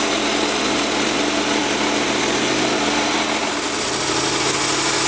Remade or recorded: recorded